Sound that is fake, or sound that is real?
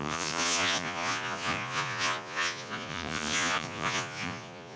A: fake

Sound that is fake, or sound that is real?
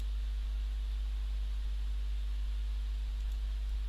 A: real